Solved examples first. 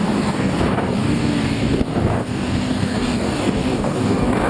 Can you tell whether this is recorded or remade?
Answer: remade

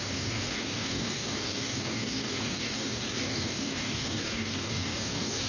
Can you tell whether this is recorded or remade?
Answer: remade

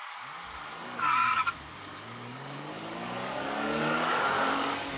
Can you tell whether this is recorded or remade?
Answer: remade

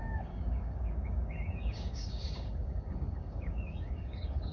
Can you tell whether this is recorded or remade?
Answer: remade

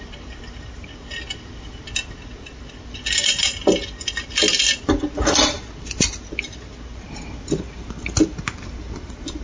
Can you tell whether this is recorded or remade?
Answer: recorded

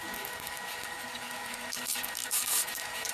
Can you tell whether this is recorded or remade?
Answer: remade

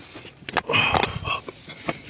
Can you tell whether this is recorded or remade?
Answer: recorded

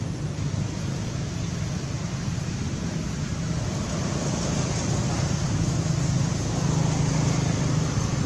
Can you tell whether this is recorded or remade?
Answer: recorded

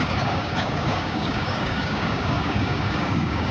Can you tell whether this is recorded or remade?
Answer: remade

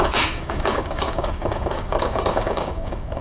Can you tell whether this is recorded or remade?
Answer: remade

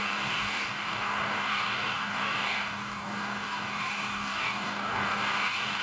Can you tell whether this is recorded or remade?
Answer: remade